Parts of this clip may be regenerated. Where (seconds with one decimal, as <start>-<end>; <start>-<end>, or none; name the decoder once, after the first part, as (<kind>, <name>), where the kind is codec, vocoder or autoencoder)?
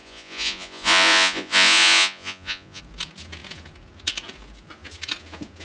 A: 0.0-2.8 (vocoder, Vocos)